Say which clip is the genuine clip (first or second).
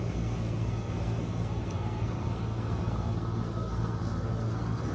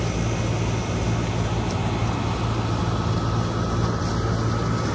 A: second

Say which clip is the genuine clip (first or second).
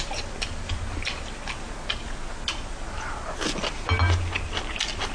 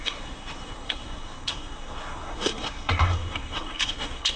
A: first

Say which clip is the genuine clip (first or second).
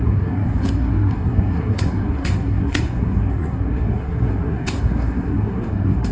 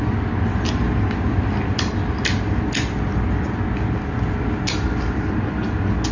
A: second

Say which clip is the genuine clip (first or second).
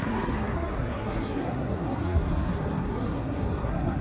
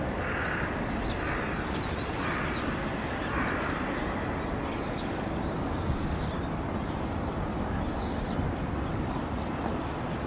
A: second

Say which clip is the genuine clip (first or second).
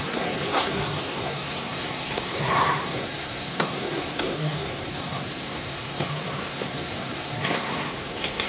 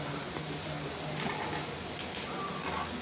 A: second